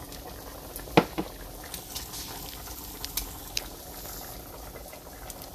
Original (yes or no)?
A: yes